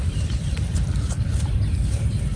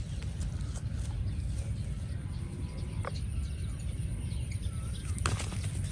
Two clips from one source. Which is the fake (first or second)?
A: first